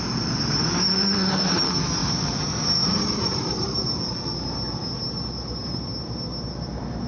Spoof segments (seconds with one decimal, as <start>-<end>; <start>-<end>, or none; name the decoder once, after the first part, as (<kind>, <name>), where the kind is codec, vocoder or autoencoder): 2.0-4.0 (vocoder, BigVGAN v2)